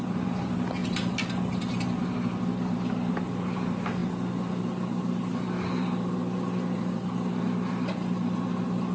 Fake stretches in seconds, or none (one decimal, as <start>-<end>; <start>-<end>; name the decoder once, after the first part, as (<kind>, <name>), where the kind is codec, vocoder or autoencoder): none